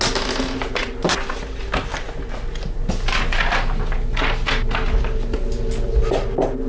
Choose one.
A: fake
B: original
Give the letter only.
B